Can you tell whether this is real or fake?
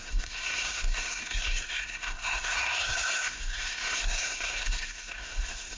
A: fake